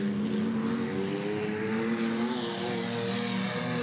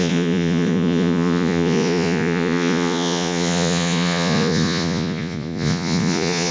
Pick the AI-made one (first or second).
second